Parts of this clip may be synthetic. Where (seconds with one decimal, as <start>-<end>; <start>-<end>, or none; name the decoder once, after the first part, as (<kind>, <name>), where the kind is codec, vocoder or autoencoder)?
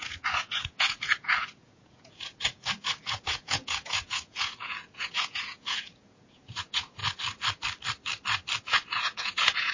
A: 0.0-7.0 (vocoder, Vocos); 8.6-9.7